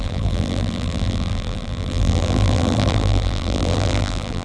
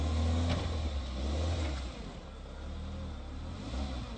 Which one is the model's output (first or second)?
first